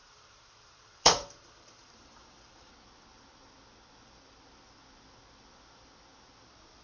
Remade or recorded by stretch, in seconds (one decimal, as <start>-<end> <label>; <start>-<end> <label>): 0.0-2.7 remade; 2.7-6.8 recorded